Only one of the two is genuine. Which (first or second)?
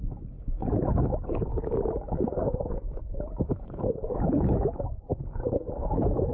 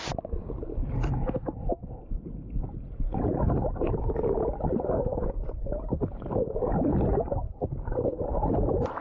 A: second